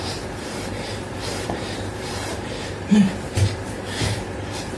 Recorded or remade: remade